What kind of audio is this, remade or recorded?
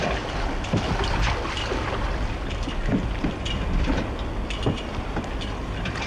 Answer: recorded